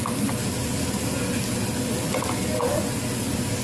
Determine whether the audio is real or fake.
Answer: real